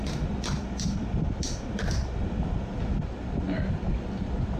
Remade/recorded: recorded